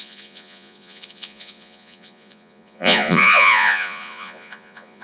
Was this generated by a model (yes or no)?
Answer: yes